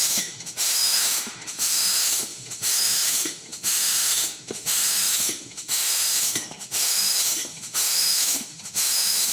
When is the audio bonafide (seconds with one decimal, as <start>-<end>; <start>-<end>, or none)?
none